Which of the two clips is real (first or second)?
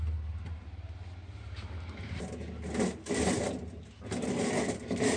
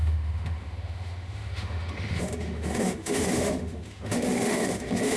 first